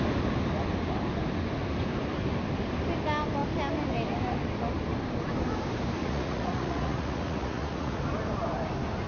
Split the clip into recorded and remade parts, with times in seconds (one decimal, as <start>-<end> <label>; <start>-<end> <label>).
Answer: 0.0-6.0 recorded; 6.0-8.0 remade; 8.0-9.1 recorded